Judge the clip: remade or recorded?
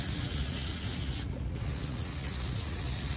remade